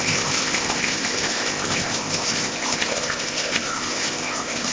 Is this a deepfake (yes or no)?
yes